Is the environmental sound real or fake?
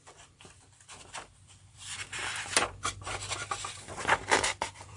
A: fake